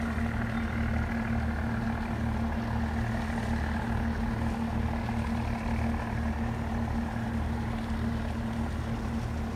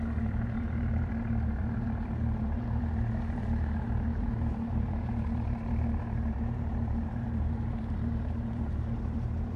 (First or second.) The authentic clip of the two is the first